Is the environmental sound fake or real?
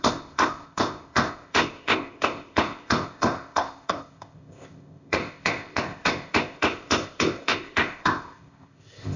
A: fake